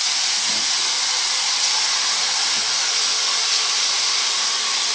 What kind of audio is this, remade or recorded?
recorded